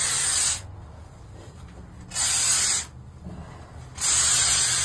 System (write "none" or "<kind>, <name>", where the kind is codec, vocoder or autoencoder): none